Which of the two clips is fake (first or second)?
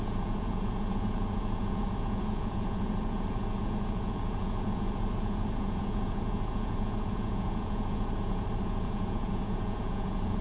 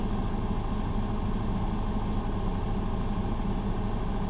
first